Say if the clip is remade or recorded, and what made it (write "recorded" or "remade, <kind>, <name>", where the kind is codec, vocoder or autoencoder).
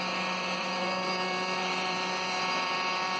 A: remade, vocoder, BigVGAN v2